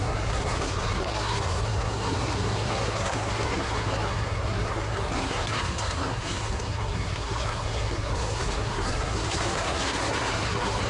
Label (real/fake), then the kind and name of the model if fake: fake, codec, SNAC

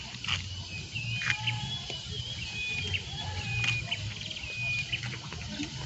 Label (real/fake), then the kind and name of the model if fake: real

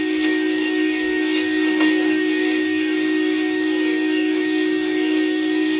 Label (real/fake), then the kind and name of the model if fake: fake, codec, DAC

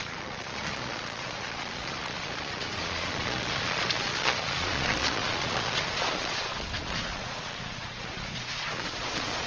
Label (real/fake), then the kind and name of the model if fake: fake, vocoder, Vocos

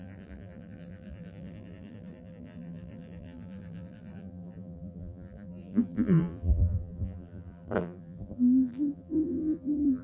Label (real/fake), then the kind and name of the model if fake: fake, vocoder, BigVGAN v2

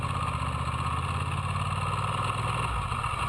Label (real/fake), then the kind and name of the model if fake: real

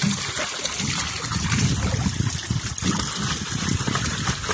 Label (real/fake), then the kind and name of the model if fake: real